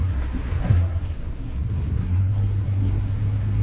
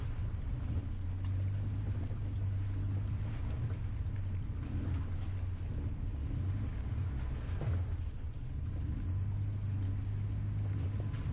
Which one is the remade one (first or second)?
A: first